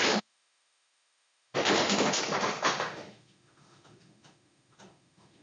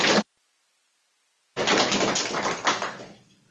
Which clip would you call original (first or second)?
second